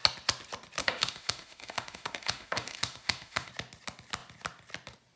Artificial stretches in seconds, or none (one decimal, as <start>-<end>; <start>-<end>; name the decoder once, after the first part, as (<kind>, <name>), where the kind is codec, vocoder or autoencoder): 0.8-3.5 (autoencoder, DAC-VAE)